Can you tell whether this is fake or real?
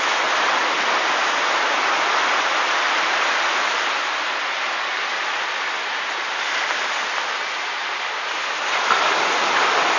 real